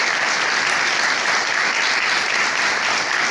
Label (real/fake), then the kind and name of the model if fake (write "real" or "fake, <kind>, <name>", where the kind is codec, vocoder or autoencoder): real